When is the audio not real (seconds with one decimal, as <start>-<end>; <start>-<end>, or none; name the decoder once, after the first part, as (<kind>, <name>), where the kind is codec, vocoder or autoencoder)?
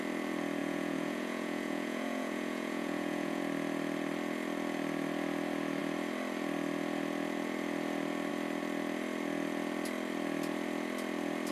0.6-3.4 (vocoder, Vocos)